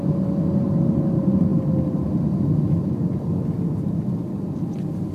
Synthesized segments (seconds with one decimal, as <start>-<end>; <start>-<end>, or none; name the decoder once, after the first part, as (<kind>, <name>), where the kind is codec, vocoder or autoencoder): none